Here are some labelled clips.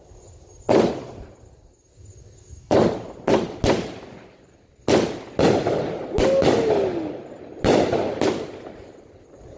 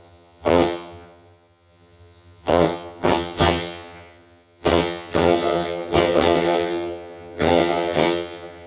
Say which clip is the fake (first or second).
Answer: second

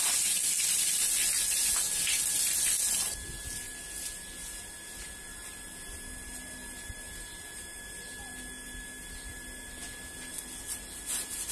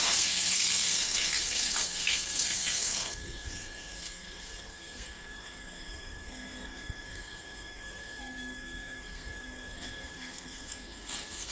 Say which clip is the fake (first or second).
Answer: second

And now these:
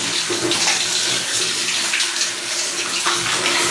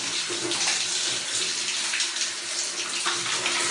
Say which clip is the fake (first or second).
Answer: first